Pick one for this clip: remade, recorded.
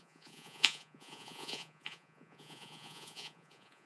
remade